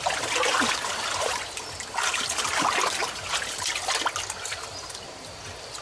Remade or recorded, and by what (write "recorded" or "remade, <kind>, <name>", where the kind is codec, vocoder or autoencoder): recorded